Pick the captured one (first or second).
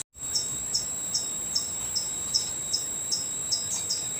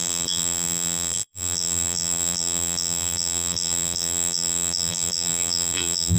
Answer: first